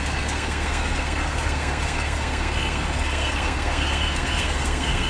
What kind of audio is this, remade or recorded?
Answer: remade